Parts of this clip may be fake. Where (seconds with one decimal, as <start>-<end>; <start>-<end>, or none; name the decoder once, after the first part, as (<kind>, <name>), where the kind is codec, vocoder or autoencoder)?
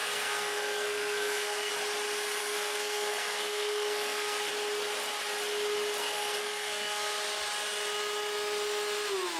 0.0-1.7 (codec, SNAC); 2.4-4.5; 6.0-7.1